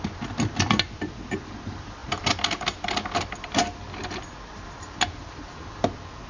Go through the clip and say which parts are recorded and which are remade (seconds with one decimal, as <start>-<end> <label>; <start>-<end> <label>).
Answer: 0.0-6.3 recorded